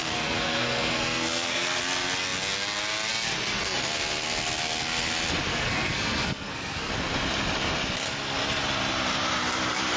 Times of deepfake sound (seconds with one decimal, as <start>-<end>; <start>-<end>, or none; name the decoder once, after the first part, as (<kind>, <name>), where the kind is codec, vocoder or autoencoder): 0.0-1.8 (codec, SNAC); 5.5-6.9